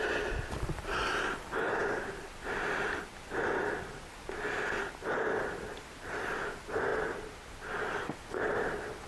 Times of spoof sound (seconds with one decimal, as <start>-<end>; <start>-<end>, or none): none